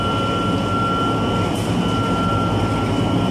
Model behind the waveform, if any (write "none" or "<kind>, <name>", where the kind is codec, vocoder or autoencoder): none